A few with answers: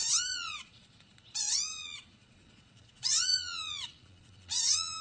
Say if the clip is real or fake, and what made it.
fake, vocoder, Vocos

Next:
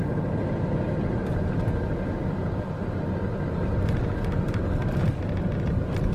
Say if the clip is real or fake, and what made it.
real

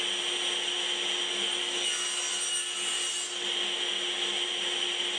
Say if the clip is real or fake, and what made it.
real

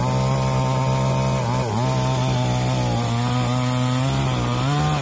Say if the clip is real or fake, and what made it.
real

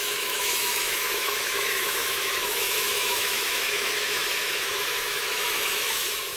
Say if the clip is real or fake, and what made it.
fake, autoencoder, DAC-VAE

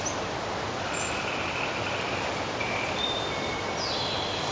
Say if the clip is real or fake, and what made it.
real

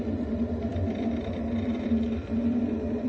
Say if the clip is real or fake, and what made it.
fake, vocoder, BigVGAN v2